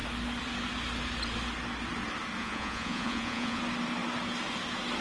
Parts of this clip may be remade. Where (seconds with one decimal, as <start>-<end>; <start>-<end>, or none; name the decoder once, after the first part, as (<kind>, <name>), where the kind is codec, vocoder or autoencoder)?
2.4-3.6 (vocoder, Vocos)